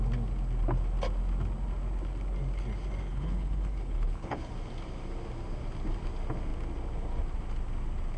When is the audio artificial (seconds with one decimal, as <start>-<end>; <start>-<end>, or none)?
3.1-4.5